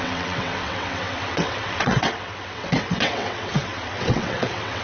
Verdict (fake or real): fake